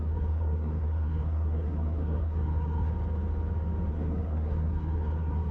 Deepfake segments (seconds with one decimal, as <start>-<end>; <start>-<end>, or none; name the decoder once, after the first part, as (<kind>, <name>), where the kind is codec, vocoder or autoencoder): 0.0-2.9 (codec, SNAC); 3.9-5.5